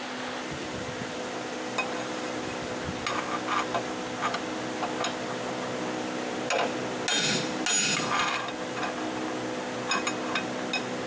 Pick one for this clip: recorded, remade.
recorded